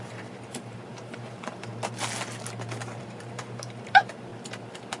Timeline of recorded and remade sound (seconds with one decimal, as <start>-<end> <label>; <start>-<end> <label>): 0.0-1.7 remade; 1.7-3.0 recorded; 3.0-4.3 remade; 4.3-5.0 recorded